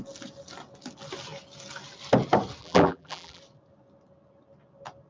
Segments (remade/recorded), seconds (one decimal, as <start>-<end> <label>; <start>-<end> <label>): 0.0-2.6 recorded; 2.6-3.4 remade; 3.4-5.1 recorded

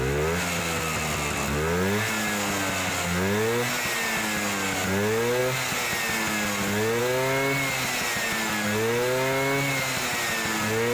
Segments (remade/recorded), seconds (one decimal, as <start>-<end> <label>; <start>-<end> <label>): 0.0-10.9 recorded

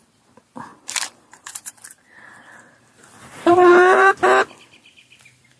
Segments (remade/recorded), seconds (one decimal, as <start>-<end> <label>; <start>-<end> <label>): 0.0-0.7 recorded; 0.7-4.1 remade; 4.1-5.6 recorded